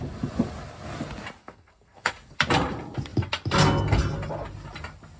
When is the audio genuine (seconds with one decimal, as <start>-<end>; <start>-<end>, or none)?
0.0-1.4; 2.1-5.2